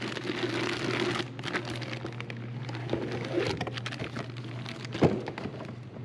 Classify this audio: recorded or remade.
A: recorded